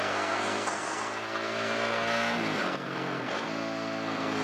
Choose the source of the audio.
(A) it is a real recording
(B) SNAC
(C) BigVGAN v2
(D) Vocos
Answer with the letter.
B